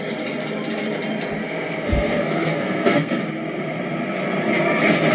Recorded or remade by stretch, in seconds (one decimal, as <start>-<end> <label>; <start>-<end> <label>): 0.0-1.4 recorded; 1.4-3.2 remade; 3.2-5.1 recorded